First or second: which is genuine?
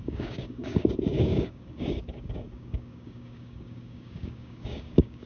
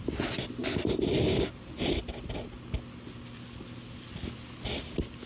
second